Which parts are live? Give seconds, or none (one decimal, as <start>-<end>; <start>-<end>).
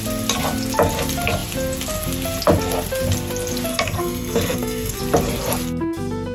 0.0-3.7; 5.0-6.3